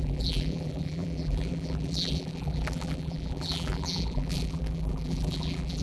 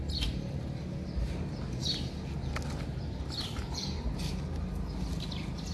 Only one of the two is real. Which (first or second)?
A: second